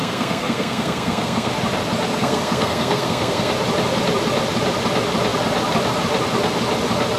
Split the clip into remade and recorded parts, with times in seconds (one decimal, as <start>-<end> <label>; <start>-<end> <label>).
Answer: 0.0-1.5 remade; 1.5-2.2 recorded; 2.2-3.5 remade; 3.5-7.2 recorded